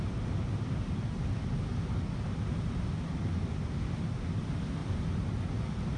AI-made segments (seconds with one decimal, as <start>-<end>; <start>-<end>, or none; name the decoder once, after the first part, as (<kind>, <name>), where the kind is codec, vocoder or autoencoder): 4.8-5.3 (vocoder, BigVGAN v2)